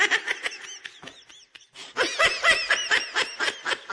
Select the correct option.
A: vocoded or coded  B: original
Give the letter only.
B